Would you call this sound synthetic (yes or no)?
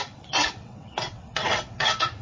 yes